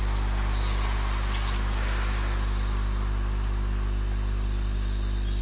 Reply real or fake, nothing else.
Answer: real